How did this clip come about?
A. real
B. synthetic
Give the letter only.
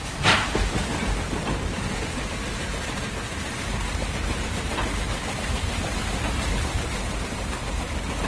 A